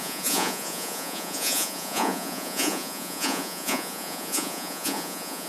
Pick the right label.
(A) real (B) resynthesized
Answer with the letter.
B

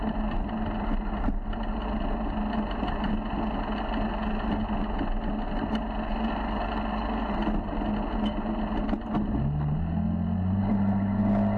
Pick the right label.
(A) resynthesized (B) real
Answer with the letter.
B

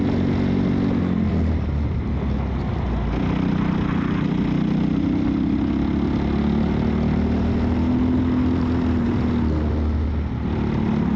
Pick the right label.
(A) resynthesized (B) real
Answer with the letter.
B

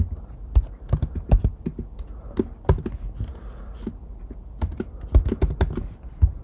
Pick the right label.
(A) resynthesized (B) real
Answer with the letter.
B